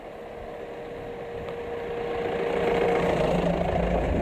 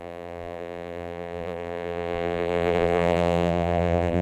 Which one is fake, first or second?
second